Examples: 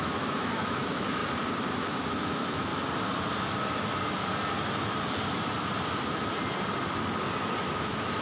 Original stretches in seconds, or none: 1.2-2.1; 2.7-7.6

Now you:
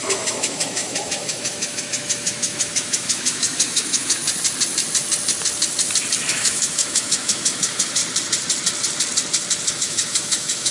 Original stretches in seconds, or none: 4.2-6.3; 8.0-9.7

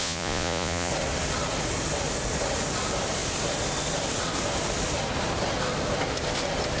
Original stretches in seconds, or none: 0.9-6.8

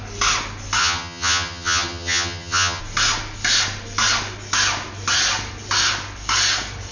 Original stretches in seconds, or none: 0.0-0.8; 2.8-6.9

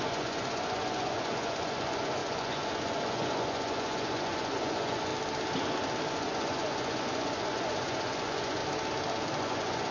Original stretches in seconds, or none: 5.1-6.1; 8.6-9.4

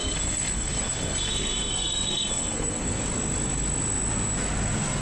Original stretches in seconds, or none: 3.0-5.0

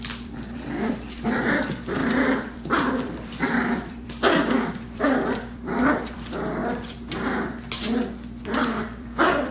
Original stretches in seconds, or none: 6.6-8.4